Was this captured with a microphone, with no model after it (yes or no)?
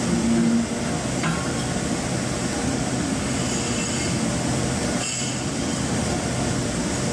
yes